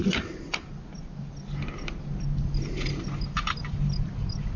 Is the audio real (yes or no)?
yes